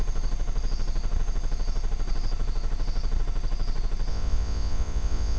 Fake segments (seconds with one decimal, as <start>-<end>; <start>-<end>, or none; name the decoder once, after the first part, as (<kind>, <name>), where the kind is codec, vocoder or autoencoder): 4.1-5.4 (vocoder, Vocos)